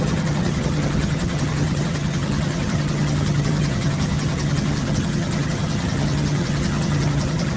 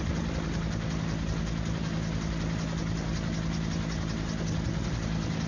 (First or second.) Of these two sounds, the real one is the second